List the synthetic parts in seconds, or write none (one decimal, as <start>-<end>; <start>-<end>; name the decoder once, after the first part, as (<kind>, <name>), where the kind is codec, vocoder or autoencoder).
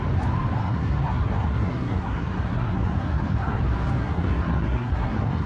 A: 0.6-3.6 (codec, SNAC); 4.0-5.5